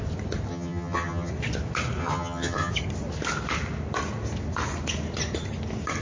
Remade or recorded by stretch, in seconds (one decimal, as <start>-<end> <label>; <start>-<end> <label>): 0.0-0.5 recorded; 0.5-1.3 remade; 1.3-2.0 recorded; 2.0-2.7 remade; 2.7-6.0 recorded